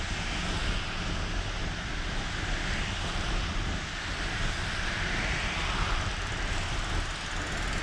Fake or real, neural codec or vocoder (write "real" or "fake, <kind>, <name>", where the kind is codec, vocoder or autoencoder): real